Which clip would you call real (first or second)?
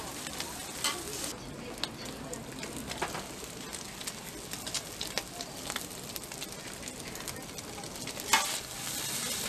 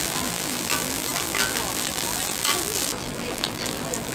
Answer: first